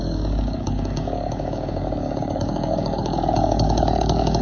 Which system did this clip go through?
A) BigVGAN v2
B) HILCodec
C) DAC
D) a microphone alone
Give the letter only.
C